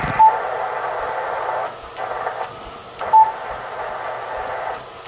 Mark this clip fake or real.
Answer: real